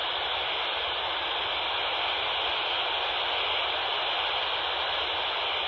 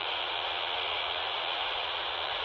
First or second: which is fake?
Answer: second